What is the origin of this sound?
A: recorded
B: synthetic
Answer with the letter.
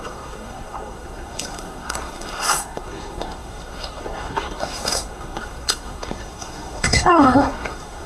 B